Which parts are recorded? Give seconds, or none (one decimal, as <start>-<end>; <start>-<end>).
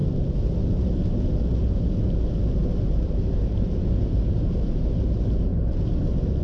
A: 0.0-2.6; 4.8-6.4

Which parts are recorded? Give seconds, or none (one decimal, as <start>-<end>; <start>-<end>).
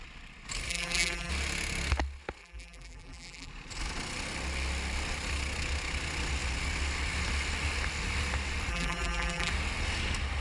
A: 0.0-0.7; 1.3-2.4; 3.5-8.7; 9.5-10.4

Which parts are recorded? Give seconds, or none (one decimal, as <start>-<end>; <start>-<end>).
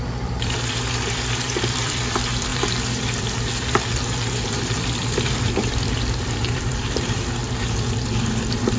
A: 7.4-8.2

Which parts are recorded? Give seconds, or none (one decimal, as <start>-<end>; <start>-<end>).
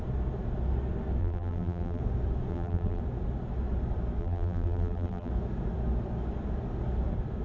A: 0.0-1.2; 2.0-2.5; 3.0-4.2; 5.3-7.4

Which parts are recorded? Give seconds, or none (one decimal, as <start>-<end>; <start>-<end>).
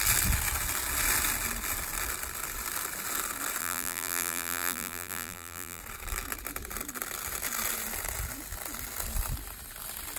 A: 0.0-3.6; 5.8-10.2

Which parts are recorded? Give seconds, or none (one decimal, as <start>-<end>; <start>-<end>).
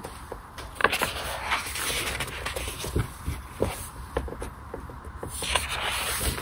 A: 0.8-3.6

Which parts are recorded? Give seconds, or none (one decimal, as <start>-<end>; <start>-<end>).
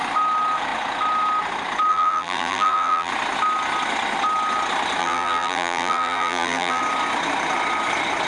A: 0.0-1.9; 3.1-5.0; 6.8-8.3